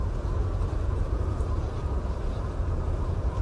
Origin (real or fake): fake